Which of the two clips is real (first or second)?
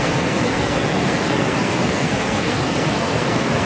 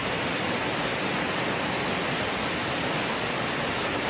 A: second